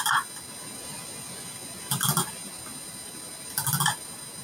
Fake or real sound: real